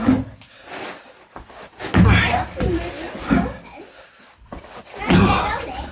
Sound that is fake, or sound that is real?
real